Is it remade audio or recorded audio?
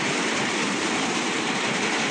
remade